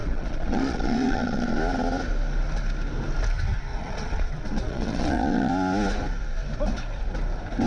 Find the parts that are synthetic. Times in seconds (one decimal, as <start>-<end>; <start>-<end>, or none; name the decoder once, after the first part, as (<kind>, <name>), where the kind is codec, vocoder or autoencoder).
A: 0.0-1.6 (vocoder, Vocos); 3.7-5.5